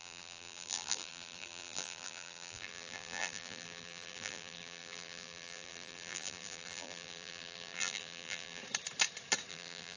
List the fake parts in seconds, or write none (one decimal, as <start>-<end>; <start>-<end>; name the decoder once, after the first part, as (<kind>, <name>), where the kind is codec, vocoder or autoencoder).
0.0-8.6 (vocoder, BigVGAN v2); 9.5-10.0